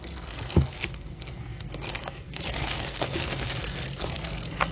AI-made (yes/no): yes